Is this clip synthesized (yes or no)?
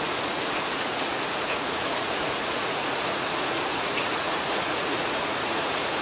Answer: yes